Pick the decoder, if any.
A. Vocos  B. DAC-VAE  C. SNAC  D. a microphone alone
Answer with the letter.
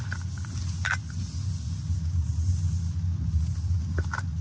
D